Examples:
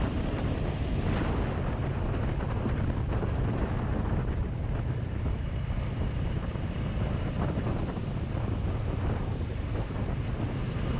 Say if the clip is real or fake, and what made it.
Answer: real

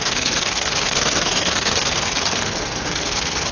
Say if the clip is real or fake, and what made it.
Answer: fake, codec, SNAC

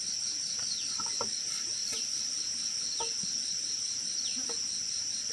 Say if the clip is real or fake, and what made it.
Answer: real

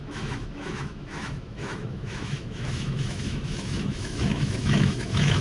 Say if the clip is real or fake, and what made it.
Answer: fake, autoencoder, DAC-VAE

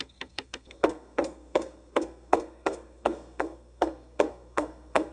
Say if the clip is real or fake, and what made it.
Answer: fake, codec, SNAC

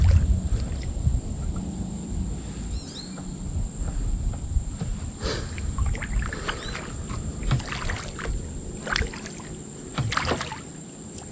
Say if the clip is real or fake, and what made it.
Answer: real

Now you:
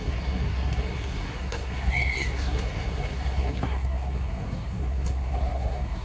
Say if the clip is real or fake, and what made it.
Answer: fake, codec, SNAC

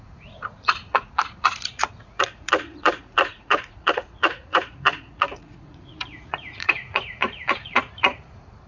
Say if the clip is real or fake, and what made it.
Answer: fake, vocoder, Vocos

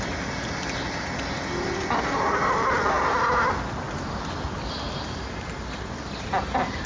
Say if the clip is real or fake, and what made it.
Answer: real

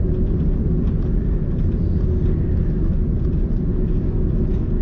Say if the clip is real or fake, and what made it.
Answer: real